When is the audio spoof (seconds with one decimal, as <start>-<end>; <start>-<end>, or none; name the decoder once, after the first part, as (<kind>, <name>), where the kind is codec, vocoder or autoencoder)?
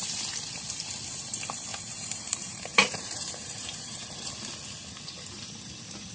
1.7-4.3 (vocoder, BigVGAN v2)